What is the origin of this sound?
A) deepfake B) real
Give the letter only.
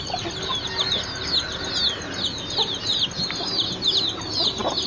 B